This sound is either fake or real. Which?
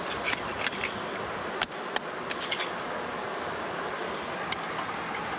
real